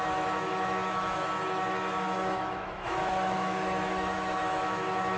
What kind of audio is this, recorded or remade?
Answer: remade